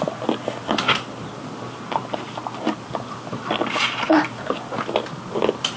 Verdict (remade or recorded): recorded